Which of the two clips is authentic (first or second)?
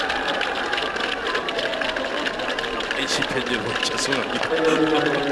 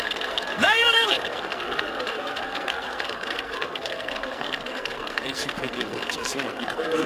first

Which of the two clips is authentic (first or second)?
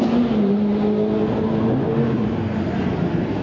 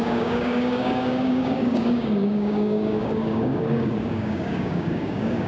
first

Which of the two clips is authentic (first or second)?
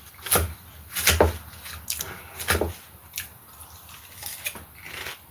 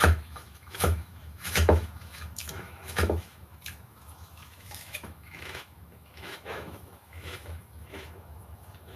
first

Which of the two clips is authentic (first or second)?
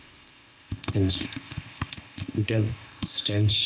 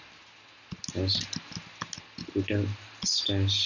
second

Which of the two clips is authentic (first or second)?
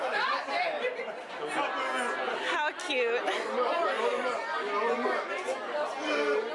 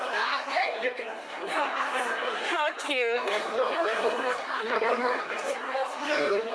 first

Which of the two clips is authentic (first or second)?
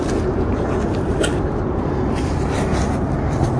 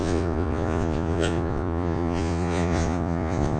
first